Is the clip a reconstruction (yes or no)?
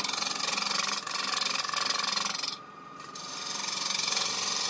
no